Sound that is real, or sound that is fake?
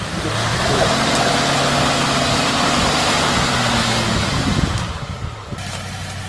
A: real